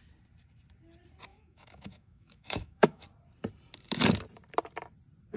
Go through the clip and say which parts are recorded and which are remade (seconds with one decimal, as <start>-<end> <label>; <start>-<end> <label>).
0.0-1.3 recorded; 1.3-3.0 remade; 3.0-5.4 recorded